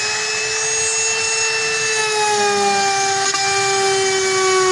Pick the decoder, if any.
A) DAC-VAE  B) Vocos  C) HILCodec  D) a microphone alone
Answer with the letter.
D